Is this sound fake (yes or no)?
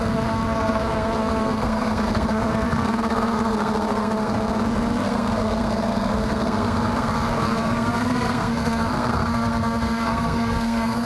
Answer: yes